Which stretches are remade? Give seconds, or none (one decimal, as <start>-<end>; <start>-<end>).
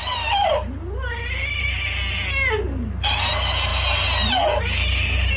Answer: none